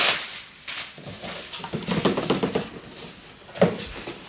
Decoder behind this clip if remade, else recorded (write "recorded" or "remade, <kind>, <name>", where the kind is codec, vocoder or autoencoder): recorded